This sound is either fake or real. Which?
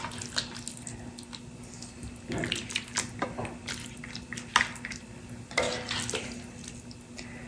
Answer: real